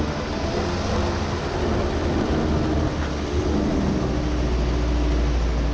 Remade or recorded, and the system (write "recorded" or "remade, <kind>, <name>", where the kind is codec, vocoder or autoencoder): recorded